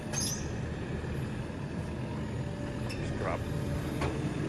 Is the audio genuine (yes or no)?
yes